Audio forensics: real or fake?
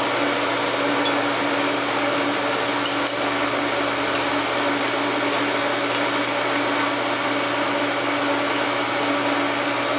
real